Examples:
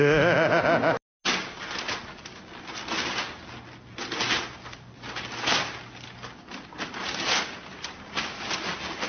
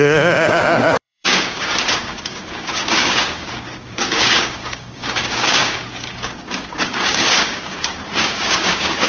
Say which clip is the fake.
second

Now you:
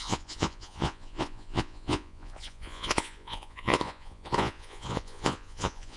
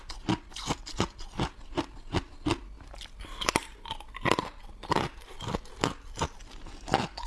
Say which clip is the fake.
first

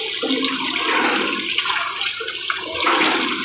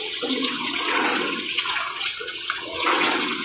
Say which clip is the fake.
second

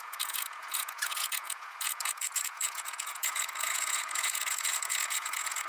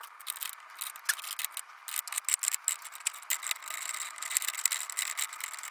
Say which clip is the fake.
first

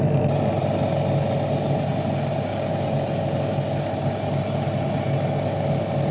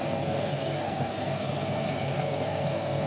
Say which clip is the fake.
second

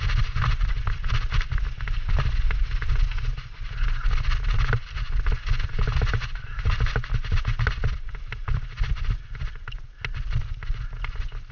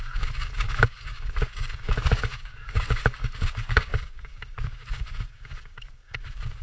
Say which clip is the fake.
second